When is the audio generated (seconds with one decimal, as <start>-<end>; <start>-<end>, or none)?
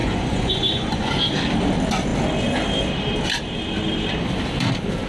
0.0-1.2